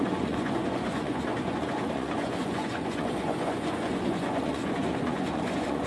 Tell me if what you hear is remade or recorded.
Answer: remade